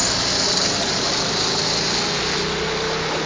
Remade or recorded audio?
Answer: recorded